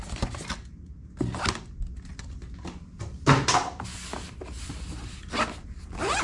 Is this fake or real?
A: real